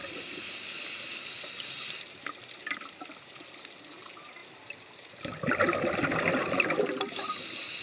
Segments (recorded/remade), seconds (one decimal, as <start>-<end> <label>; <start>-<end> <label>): 0.0-7.8 recorded